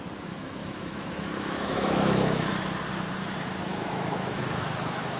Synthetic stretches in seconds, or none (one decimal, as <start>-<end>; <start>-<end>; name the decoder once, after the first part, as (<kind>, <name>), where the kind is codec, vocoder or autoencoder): 0.6-2.5 (autoencoder, DAC-VAE); 3.7-5.2